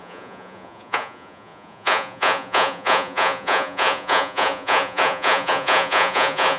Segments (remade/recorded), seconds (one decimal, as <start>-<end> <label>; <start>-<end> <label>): 0.0-6.6 remade